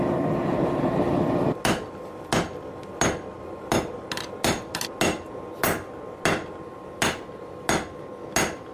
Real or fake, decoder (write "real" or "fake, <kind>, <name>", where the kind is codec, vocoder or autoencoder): real